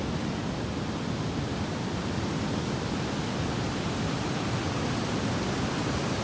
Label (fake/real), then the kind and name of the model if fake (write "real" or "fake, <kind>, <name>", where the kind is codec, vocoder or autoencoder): real